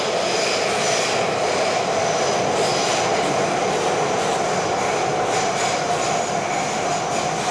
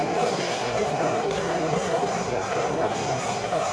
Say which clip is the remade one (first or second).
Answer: second